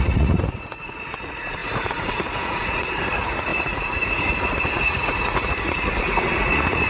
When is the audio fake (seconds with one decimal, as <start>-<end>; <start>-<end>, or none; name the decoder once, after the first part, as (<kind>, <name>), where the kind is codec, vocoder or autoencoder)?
0.0-6.9 (vocoder, Vocos)